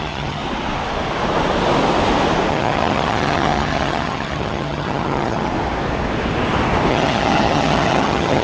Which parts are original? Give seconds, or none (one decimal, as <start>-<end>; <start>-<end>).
0.4-2.5; 5.5-6.9